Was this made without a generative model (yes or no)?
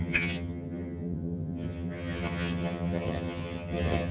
no